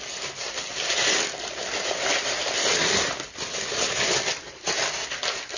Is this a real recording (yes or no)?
yes